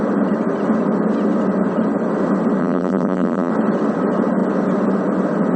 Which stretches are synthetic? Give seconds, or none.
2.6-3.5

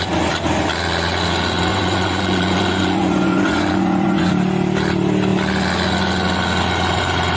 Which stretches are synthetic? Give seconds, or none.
1.7-4.3

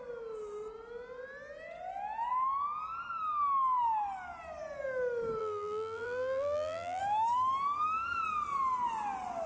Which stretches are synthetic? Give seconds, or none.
5.4-7.0

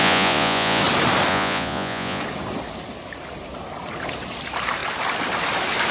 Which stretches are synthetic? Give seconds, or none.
0.0-0.8; 1.3-2.2

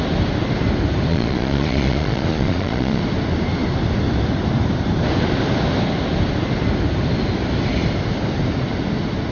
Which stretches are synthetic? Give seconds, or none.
1.1-3.0